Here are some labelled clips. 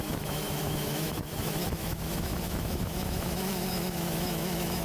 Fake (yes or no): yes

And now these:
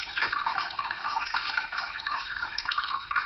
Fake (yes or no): yes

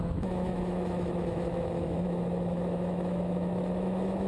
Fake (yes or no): yes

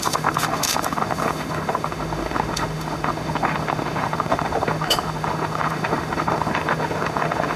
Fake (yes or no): yes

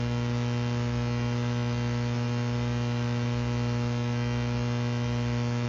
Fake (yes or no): yes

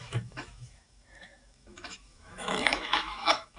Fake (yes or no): yes